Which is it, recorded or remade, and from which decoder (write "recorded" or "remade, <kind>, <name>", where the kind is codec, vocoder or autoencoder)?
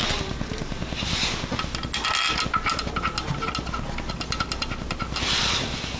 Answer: recorded